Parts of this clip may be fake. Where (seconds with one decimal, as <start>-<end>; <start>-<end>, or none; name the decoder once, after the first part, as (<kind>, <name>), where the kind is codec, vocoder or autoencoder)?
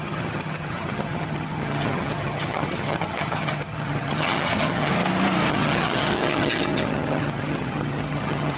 0.0-4.9 (vocoder, HiFi-GAN); 5.5-8.6